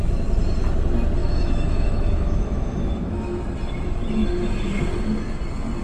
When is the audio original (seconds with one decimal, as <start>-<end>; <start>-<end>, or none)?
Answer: 0.0-1.2; 3.4-5.8